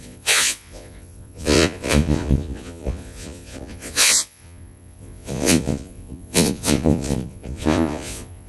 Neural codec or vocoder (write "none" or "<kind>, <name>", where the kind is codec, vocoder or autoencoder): vocoder, Vocos